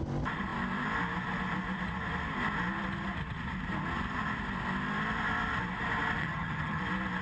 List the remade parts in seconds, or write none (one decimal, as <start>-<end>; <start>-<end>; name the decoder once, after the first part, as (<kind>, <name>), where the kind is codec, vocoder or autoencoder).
6.2-6.8 (vocoder, HiFi-GAN)

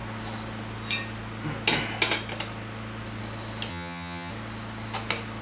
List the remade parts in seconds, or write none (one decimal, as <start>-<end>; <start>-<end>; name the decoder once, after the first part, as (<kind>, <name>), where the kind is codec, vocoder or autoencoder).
3.7-4.3 (vocoder, HiFi-GAN)

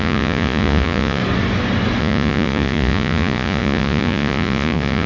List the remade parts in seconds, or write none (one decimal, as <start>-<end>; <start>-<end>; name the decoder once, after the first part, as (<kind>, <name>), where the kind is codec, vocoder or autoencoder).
0.0-1.2 (vocoder, Vocos); 2.0-5.1

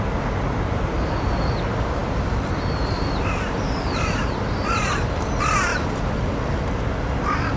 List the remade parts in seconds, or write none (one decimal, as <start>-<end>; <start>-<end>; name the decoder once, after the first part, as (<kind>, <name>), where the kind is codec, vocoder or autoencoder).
none

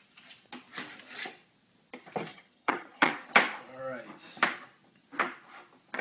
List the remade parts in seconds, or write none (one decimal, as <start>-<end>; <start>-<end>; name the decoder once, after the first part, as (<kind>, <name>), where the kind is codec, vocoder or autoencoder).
2.3-3.1 (vocoder, HiFi-GAN)

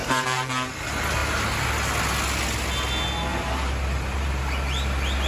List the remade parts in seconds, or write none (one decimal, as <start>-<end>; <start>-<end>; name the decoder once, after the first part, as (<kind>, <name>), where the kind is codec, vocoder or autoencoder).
0.0-0.5 (vocoder, BigVGAN v2); 3.3-4.3

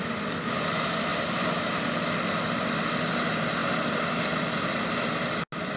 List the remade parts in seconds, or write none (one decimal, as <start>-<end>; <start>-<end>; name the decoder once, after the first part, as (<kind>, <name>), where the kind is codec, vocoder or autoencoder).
none

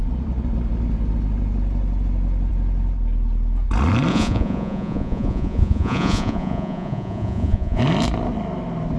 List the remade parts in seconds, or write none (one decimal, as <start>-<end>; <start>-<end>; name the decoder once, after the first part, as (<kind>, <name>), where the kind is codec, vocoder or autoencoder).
4.1-7.8 (vocoder, Vocos)